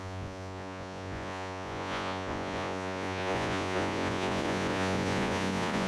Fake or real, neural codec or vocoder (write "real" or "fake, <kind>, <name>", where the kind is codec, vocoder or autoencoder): fake, vocoder, Vocos